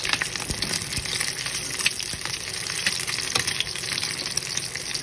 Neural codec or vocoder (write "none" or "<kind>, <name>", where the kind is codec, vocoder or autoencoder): none